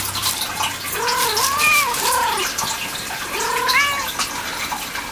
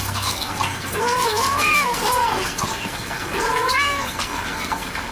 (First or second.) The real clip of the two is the first